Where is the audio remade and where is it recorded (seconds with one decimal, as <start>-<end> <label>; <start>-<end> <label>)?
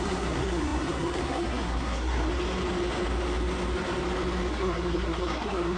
0.0-2.3 remade; 2.3-4.5 recorded; 4.5-5.8 remade